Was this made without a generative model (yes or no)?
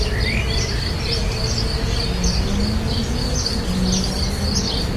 yes